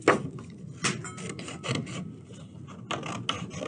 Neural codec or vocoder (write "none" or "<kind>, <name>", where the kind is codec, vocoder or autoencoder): none